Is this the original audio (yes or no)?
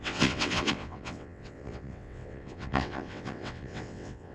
no